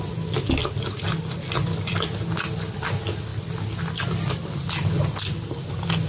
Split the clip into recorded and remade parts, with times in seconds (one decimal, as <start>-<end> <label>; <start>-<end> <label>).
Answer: 0.0-6.1 recorded